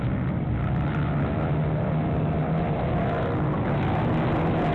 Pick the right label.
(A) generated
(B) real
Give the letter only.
B